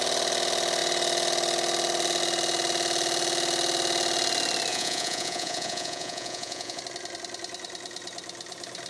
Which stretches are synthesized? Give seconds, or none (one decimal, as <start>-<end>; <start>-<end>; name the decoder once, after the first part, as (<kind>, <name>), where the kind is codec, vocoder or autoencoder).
4.7-6.8 (vocoder, Vocos)